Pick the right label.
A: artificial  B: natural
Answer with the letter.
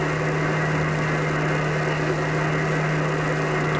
B